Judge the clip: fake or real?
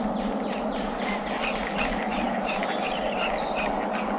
real